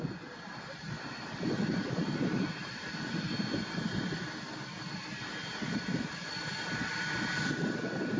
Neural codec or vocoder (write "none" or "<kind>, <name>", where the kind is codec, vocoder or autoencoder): none